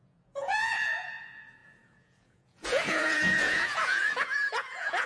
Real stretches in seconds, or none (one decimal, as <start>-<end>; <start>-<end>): none